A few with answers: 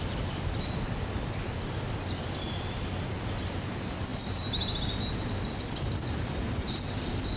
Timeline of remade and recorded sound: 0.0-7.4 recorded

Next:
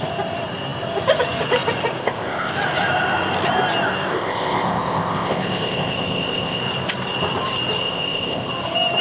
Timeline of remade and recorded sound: 0.0-2.0 recorded; 2.0-2.5 remade; 2.5-4.1 recorded; 4.1-6.6 remade; 6.6-7.8 recorded; 7.8-8.5 remade; 8.5-9.0 recorded

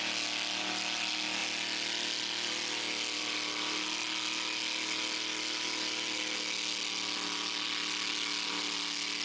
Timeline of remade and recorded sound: 0.0-9.2 recorded

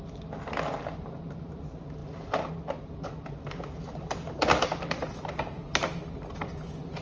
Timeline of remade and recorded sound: 0.0-7.0 recorded

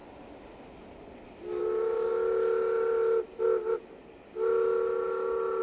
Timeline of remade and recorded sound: 0.0-5.6 recorded

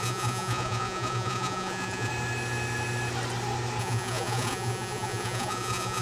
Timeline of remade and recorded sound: 0.0-2.1 remade; 2.1-3.8 recorded; 3.8-6.0 remade

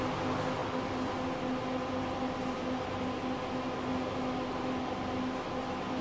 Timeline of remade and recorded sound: 0.0-6.0 recorded

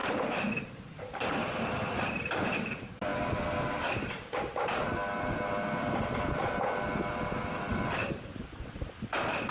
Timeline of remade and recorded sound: 0.0-9.5 recorded